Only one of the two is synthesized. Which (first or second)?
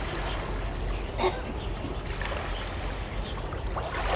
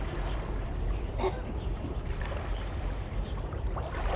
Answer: second